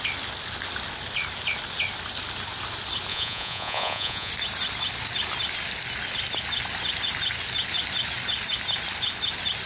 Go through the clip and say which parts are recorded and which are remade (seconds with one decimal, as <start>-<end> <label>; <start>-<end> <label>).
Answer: 0.0-3.1 recorded; 3.1-4.3 remade; 4.3-9.7 recorded